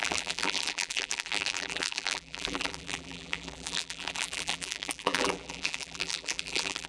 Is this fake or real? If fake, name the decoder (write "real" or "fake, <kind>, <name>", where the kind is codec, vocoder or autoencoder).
fake, vocoder, BigVGAN v2